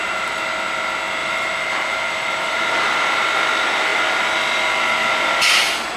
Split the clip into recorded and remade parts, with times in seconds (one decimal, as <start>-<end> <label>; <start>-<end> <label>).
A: 0.0-1.2 recorded; 1.2-3.2 remade; 3.2-6.0 recorded